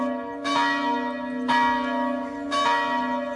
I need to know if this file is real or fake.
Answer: real